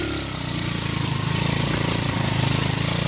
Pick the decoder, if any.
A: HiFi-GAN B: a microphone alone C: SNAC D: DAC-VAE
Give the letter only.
B